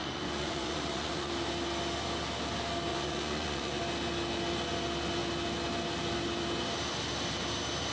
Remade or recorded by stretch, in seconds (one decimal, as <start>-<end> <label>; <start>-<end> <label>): 0.0-1.3 remade; 1.3-2.9 recorded; 2.9-3.8 remade; 3.8-7.9 recorded